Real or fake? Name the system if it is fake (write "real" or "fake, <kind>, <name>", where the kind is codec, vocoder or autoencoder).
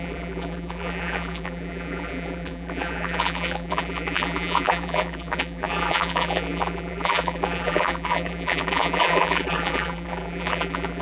fake, vocoder, BigVGAN v2